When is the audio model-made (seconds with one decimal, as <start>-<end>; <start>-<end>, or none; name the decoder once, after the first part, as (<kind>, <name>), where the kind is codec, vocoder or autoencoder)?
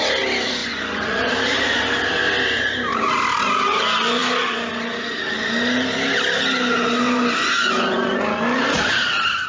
0.6-1.3 (vocoder, Vocos); 7.4-8.2